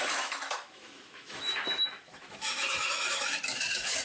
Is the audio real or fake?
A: fake